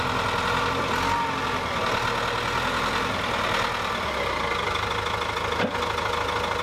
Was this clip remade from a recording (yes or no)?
no